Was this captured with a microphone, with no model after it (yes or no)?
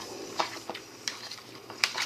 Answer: no